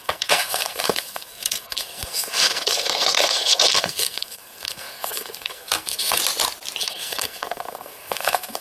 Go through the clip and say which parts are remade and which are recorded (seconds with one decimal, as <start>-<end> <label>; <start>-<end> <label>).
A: 0.0-6.2 remade; 6.2-6.8 recorded; 6.8-8.6 remade